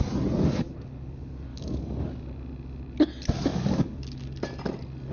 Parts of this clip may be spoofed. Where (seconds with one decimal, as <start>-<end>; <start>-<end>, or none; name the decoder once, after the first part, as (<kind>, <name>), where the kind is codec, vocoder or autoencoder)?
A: 1.5-2.1 (codec, DAC); 3.5-4.4